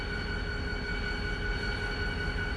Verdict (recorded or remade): recorded